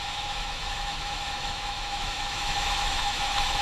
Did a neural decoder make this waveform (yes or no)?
yes